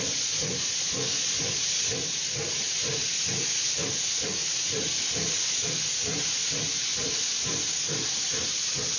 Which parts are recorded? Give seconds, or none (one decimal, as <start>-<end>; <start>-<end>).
0.0-9.0